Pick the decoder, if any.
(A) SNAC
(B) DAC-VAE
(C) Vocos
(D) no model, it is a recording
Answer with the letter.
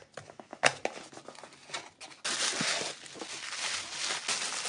D